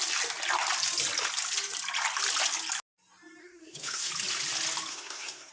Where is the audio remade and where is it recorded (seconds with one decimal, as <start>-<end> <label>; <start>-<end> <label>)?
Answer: 0.0-3.4 recorded; 3.4-4.1 remade; 4.1-4.9 recorded; 4.9-5.5 remade